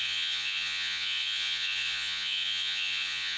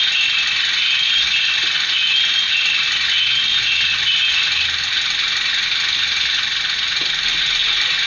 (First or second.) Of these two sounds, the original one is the second